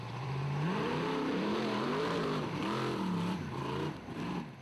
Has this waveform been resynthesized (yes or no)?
yes